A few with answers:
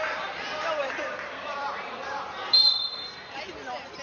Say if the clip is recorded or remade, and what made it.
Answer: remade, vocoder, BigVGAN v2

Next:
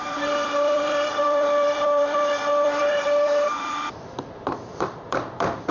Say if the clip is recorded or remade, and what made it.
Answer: remade, vocoder, BigVGAN v2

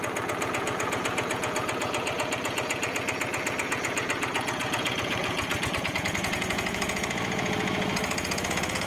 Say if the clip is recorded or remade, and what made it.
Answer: remade, vocoder, Vocos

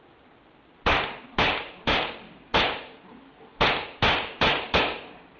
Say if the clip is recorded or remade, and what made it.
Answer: recorded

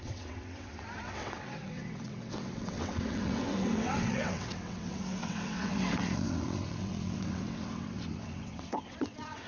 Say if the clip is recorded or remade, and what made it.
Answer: remade, vocoder, WaveNeXt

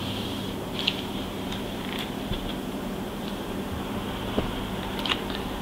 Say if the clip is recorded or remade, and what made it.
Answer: remade, vocoder, BigVGAN v2